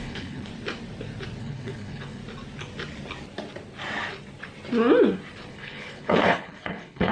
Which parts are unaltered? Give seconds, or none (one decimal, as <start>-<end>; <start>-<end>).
0.5-1.4; 2.2-5.5